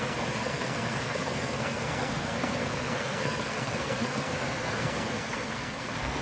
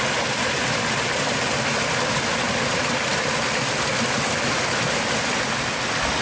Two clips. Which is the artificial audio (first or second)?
first